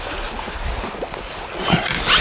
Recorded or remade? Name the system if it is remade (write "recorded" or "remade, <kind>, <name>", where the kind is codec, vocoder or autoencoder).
recorded